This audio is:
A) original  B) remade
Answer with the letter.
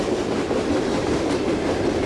A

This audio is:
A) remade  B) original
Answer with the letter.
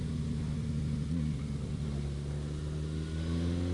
B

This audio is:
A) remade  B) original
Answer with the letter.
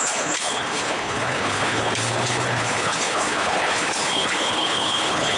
A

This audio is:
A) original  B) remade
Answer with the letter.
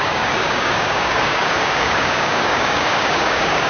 B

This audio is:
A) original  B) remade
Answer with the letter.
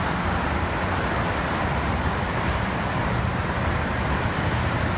B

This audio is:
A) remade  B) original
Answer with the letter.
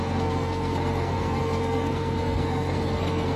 A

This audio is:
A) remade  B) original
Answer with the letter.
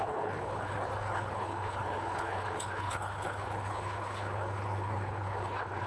A